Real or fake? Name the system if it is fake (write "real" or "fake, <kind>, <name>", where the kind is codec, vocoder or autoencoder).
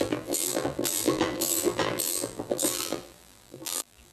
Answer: fake, vocoder, BigVGAN v2